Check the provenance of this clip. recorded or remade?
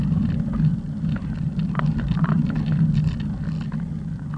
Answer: recorded